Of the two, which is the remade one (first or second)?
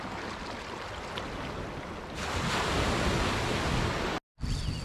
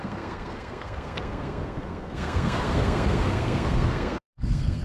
second